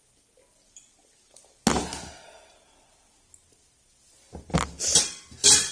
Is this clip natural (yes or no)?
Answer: yes